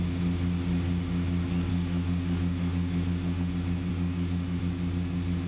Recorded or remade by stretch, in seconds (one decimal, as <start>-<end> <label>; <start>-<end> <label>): 0.0-1.7 recorded; 1.7-3.5 remade; 3.5-3.9 recorded; 3.9-4.6 remade; 4.6-5.5 recorded

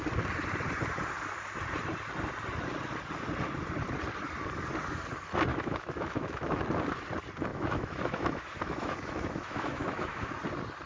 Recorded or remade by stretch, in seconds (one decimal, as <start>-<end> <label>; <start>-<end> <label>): 0.0-5.5 recorded; 5.5-6.6 remade; 6.6-7.5 recorded; 7.5-10.3 remade; 10.3-10.9 recorded

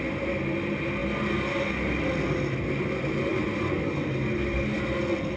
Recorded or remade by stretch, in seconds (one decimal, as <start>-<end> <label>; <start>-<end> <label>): 0.0-5.4 recorded

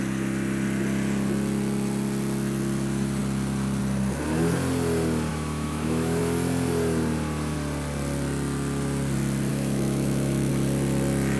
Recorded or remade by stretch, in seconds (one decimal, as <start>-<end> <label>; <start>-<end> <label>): 0.0-5.3 recorded; 5.3-6.2 remade; 6.2-9.5 recorded; 9.5-10.5 remade; 10.5-11.4 recorded

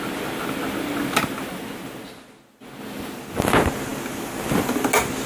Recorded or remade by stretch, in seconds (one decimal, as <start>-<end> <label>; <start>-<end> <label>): 0.0-5.3 recorded

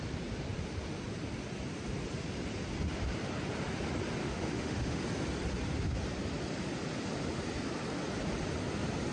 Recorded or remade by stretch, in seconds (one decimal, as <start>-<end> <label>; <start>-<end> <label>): 0.0-4.2 recorded; 4.2-5.0 remade; 5.0-9.1 recorded